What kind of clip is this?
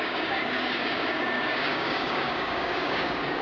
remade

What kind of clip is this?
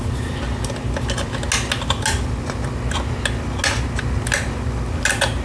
recorded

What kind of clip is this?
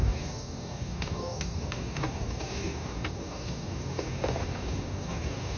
remade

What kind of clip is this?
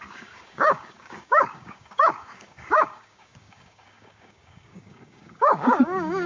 remade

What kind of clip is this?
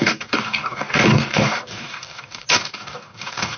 remade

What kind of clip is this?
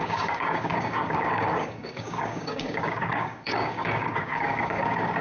remade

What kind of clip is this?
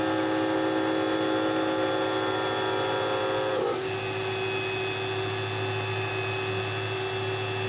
recorded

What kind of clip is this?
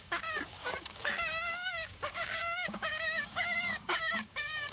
remade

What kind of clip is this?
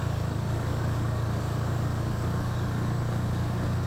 remade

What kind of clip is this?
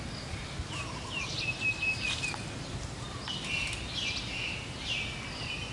recorded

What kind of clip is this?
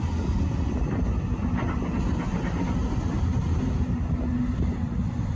recorded